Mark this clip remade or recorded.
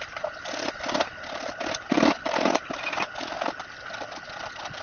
recorded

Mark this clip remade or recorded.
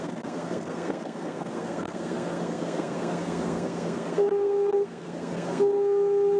remade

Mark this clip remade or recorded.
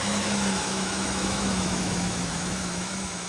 remade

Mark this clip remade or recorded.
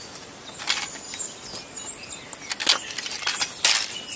recorded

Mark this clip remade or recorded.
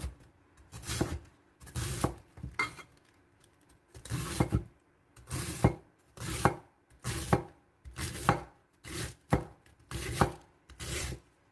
recorded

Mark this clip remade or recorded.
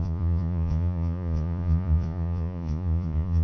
remade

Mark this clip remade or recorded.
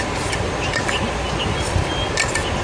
recorded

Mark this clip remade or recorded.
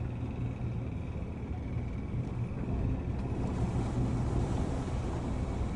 recorded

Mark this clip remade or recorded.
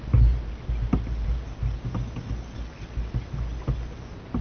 recorded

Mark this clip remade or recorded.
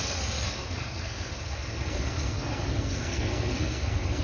remade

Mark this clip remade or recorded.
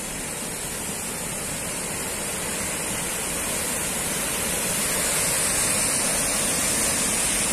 recorded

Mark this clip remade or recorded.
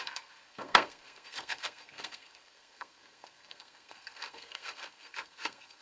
remade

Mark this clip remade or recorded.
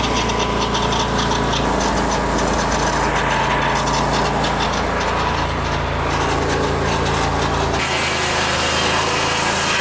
recorded